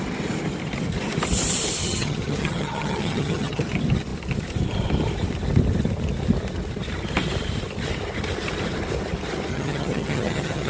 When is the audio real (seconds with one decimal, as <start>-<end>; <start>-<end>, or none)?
0.0-1.8; 3.6-9.5